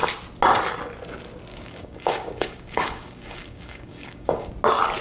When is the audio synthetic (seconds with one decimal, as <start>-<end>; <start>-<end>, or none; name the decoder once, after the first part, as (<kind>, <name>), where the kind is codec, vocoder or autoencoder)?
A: 1.5-4.5 (codec, DAC)